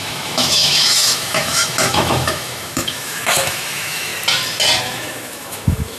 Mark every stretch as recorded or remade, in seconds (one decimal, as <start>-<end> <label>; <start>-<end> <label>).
0.0-4.1 remade; 4.1-4.8 recorded; 4.8-6.0 remade